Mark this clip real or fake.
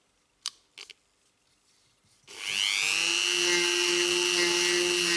real